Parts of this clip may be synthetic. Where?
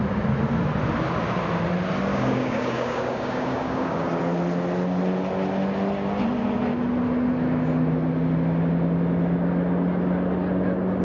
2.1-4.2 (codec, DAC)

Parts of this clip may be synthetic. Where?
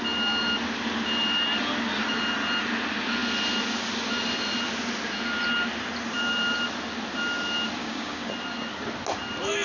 7.8-8.3 (codec, DAC)